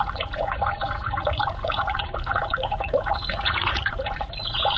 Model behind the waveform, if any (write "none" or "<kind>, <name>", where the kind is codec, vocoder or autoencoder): vocoder, Vocos